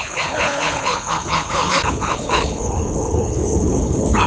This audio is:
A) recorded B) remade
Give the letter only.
B